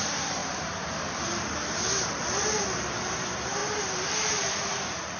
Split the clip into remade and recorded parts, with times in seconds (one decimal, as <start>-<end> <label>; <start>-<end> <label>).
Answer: 0.0-3.6 remade; 3.6-4.1 recorded; 4.1-5.2 remade